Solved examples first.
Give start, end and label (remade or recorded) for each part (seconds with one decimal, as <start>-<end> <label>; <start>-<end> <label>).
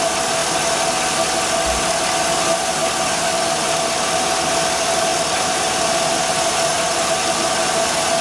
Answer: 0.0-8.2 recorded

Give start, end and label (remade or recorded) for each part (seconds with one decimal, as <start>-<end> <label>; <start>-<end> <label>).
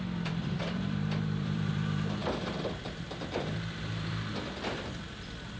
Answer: 0.0-5.6 remade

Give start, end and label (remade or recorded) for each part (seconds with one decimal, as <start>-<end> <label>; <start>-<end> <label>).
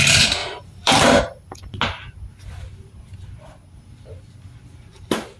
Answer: 0.0-0.4 recorded; 0.4-1.2 remade; 1.2-5.4 recorded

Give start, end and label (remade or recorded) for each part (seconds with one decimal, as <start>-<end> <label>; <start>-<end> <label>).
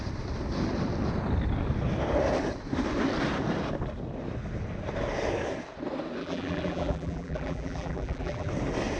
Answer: 0.0-6.2 recorded; 6.2-8.5 remade; 8.5-9.0 recorded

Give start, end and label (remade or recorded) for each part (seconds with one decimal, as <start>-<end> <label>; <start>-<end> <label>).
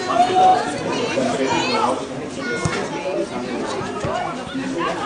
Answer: 0.0-5.1 recorded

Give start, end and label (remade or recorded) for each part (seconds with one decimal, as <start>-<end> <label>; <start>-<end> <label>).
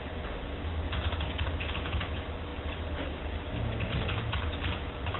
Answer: 0.0-2.5 recorded; 2.5-3.2 remade; 3.2-5.2 recorded